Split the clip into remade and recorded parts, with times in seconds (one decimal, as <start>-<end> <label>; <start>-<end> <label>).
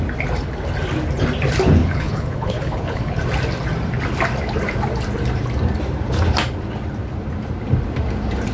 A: 0.0-1.8 recorded; 1.8-3.2 remade; 3.2-8.5 recorded